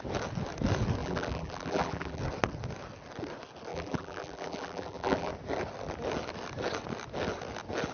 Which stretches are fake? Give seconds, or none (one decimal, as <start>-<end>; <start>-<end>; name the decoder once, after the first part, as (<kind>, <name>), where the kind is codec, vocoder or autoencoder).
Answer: 1.0-2.2 (vocoder, BigVGAN v2); 3.7-5.3